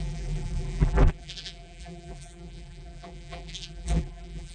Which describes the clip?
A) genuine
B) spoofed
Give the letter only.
B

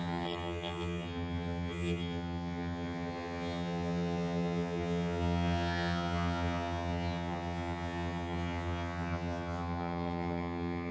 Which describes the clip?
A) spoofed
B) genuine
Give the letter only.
A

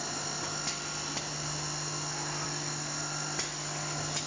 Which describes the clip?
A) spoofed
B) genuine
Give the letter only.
B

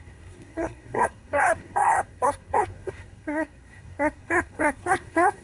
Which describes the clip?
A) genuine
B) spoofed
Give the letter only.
B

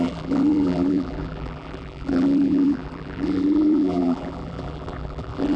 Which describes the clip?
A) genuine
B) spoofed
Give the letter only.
B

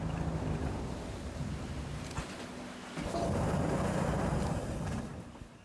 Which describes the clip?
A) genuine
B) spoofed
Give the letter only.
A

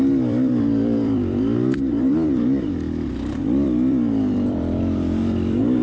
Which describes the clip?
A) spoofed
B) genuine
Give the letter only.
A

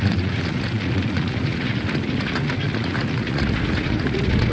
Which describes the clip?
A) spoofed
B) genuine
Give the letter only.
A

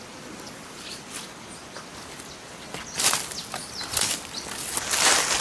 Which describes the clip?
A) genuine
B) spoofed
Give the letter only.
A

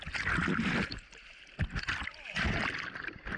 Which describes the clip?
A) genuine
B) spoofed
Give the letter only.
A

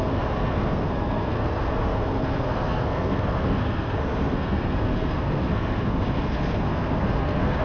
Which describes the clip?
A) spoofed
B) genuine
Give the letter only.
A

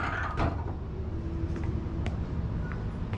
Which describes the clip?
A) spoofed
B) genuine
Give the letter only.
A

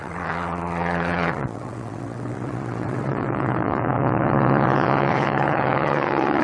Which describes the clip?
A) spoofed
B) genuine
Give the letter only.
A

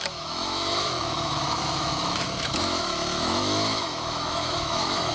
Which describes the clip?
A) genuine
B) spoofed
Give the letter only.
B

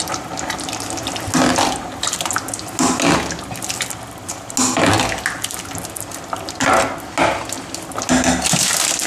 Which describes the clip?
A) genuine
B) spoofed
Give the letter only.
A